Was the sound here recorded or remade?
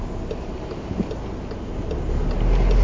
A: recorded